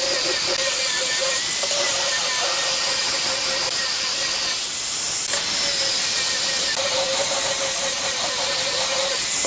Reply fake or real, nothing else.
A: real